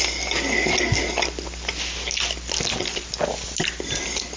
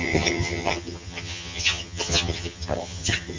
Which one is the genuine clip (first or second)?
first